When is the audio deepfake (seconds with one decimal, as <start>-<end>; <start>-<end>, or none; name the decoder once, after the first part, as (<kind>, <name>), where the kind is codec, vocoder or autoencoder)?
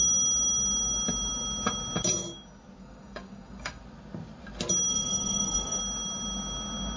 2.8-3.8 (codec, DAC); 4.9-5.8